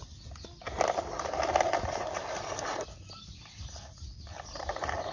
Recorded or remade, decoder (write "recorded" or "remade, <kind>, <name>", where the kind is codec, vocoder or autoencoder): recorded